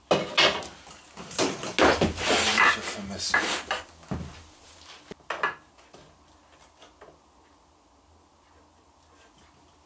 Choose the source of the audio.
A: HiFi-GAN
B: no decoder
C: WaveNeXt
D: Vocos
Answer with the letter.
B